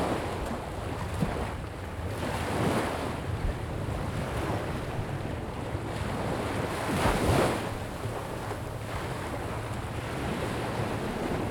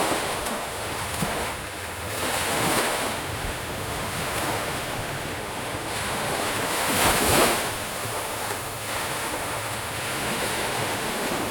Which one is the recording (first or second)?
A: first